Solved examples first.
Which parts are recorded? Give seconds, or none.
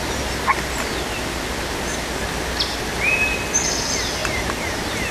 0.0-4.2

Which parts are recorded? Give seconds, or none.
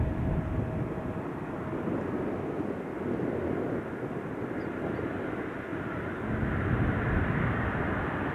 0.0-8.3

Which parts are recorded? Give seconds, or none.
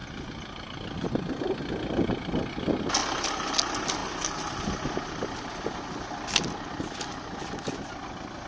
0.0-8.5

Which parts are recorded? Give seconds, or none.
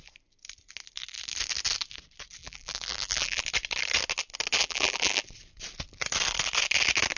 0.0-2.4; 3.4-4.6; 5.2-7.2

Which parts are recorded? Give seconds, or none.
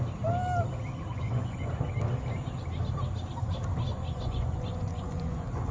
0.0-1.1; 1.7-3.9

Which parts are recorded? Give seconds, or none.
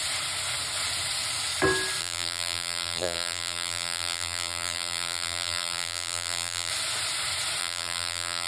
0.0-2.0; 6.7-7.6